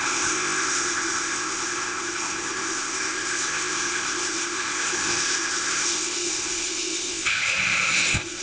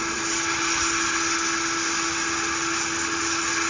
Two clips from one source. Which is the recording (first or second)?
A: second